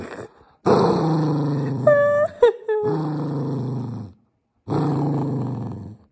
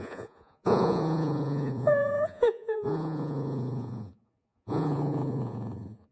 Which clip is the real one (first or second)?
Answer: first